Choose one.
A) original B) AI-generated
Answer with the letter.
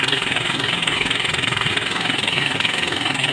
B